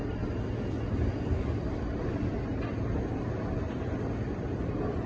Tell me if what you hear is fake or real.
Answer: fake